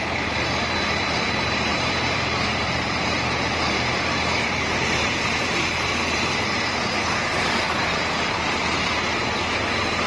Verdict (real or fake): fake